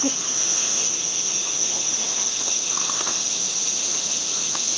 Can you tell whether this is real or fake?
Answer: fake